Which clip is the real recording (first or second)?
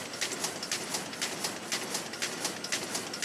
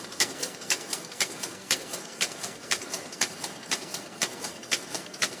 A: first